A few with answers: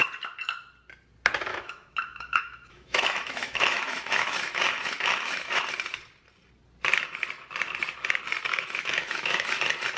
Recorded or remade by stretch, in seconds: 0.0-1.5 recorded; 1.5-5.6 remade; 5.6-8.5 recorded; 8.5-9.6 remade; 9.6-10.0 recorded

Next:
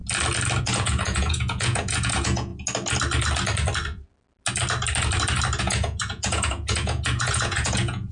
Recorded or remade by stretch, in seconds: 0.0-0.6 recorded; 0.6-2.5 remade; 2.5-5.6 recorded; 5.6-8.1 remade